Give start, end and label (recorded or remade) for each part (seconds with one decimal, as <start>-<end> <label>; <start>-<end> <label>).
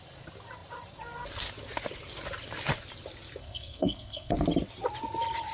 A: 0.0-3.4 recorded; 3.4-4.3 remade; 4.3-5.5 recorded